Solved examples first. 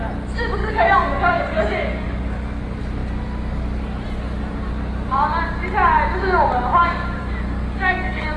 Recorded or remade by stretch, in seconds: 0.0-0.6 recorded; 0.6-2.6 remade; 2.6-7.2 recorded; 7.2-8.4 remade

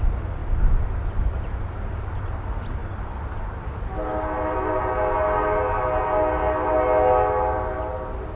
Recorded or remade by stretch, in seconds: 0.0-8.4 recorded

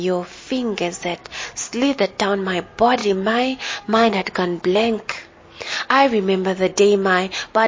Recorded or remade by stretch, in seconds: 0.0-1.2 recorded; 1.2-2.1 remade; 2.1-3.0 recorded; 3.0-5.9 remade; 5.9-7.7 recorded

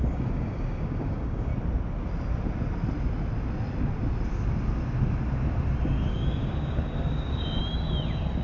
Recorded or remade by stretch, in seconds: 0.0-1.5 remade; 1.5-6.1 recorded; 6.1-7.6 remade; 7.6-8.4 recorded